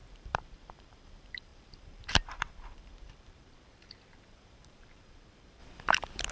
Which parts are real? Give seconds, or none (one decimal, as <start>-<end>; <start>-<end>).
none